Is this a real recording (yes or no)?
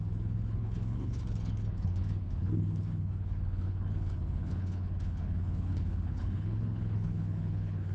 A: no